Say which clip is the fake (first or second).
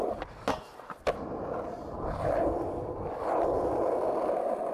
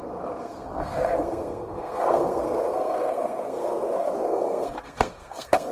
second